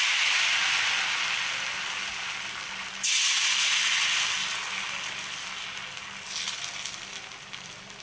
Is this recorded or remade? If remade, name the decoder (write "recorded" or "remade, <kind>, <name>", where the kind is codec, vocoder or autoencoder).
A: recorded